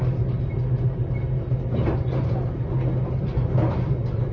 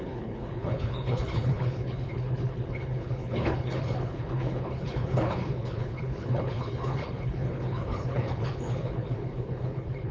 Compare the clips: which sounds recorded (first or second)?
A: first